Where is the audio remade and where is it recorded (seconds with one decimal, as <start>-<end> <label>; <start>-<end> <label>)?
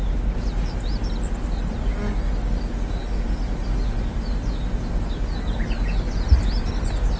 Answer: 0.0-7.2 recorded